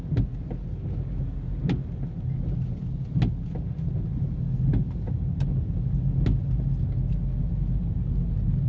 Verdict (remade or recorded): recorded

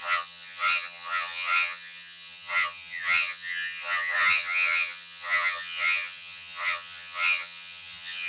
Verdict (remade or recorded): remade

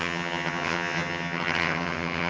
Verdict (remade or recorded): remade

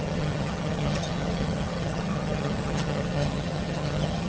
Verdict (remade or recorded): remade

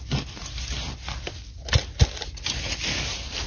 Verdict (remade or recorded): recorded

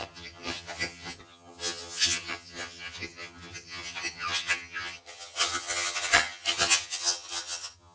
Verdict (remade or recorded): remade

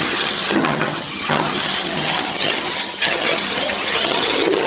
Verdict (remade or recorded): remade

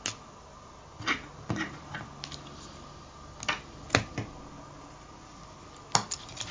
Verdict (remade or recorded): recorded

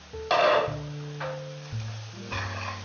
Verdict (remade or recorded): recorded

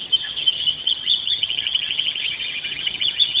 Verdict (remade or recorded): remade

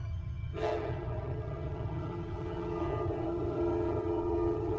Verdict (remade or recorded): remade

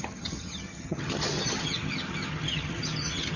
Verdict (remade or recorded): remade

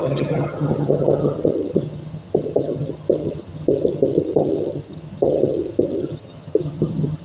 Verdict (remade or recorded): remade